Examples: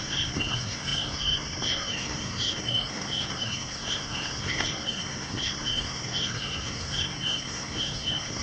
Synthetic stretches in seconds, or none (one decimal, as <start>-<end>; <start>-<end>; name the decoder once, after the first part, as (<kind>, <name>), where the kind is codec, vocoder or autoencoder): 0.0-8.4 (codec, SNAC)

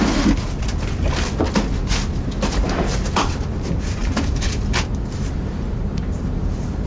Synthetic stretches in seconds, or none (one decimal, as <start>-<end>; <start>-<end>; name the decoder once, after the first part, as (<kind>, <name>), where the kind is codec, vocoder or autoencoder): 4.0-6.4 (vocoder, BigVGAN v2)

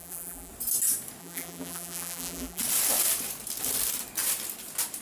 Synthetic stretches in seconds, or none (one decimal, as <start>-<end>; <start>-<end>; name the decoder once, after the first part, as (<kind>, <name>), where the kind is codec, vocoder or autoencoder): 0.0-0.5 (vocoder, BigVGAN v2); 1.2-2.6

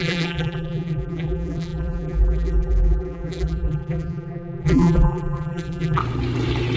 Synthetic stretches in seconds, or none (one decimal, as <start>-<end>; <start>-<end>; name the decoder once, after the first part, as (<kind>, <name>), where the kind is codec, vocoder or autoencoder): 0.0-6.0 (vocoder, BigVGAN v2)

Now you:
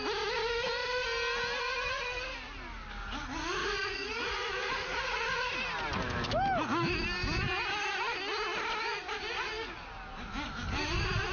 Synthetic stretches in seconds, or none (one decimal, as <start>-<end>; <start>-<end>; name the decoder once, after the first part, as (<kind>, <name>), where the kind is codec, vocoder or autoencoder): 3.6-5.4 (vocoder, Vocos)